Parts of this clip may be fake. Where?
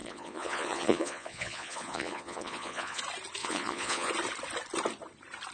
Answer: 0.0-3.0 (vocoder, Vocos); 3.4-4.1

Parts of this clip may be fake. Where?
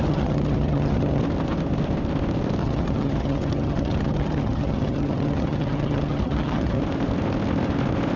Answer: 0.0-1.2 (vocoder, HiFi-GAN); 2.6-6.8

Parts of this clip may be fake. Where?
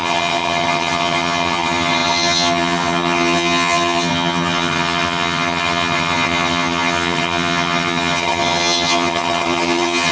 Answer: 0.0-10.1 (vocoder, HiFi-GAN)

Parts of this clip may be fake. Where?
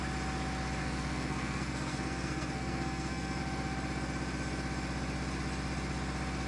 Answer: 0.8-3.4 (codec, SNAC)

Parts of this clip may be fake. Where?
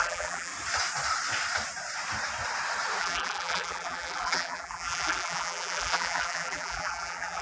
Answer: 0.0-0.5 (vocoder, BigVGAN v2); 3.0-7.4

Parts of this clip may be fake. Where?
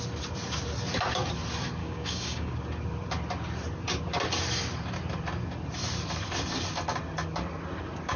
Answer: 1.8-2.5 (codec, DAC)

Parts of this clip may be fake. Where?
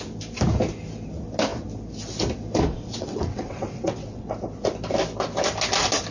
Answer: 2.7-4.3 (vocoder, WaveNeXt)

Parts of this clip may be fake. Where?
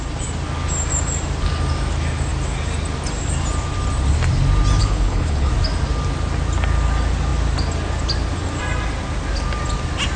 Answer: 4.8-5.5 (codec, HILCodec)